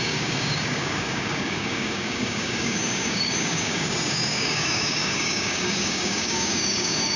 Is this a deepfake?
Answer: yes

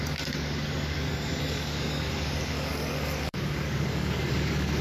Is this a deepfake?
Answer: yes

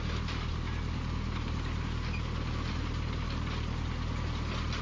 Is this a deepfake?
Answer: no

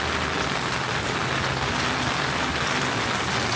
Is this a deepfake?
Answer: no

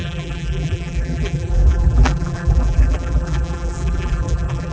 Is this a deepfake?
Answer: yes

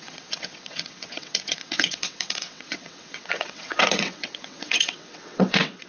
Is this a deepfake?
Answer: yes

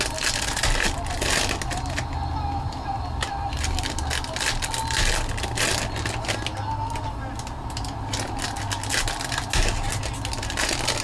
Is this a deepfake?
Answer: no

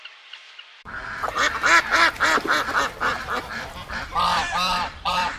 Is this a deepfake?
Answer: yes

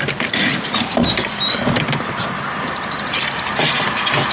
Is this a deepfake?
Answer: no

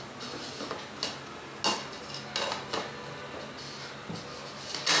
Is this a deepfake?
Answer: no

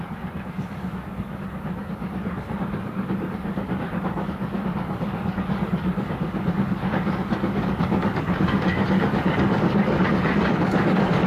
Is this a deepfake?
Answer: yes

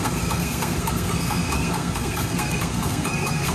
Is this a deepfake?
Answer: yes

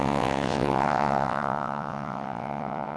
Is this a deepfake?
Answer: yes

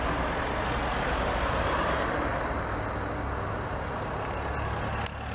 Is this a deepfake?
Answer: no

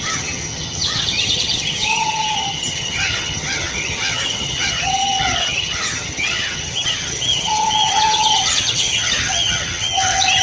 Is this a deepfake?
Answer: yes